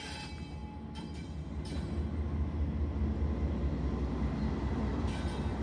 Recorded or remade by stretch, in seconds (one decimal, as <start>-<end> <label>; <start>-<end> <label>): 0.0-5.6 recorded